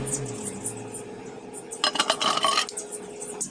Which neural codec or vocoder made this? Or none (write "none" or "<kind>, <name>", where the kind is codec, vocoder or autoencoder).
none